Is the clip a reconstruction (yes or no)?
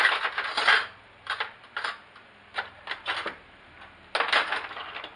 no